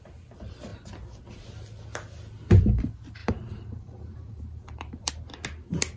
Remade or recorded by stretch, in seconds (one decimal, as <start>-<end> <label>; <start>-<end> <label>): 0.0-3.2 recorded; 3.2-5.1 remade; 5.1-6.0 recorded